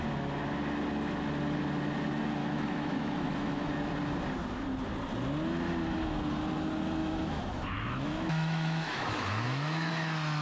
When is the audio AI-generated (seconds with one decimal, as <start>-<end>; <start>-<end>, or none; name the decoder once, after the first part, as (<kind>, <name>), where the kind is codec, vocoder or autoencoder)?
2.4-3.7 (autoencoder, DAC-VAE); 7.0-9.9